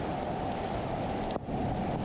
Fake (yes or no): no